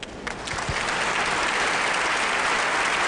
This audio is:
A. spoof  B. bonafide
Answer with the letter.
B